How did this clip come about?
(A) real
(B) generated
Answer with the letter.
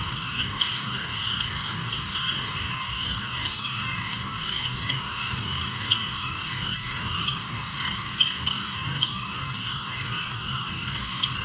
B